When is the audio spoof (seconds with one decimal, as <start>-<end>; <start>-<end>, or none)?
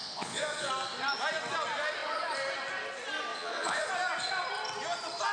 0.0-0.7; 3.3-3.9